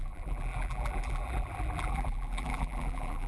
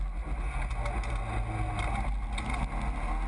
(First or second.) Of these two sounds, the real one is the second